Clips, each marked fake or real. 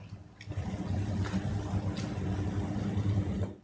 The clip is real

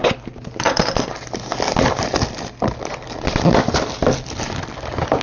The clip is real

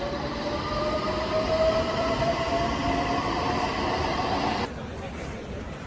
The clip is fake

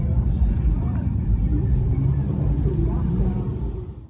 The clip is fake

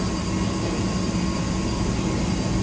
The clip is fake